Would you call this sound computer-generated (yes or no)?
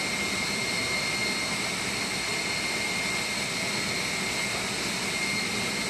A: no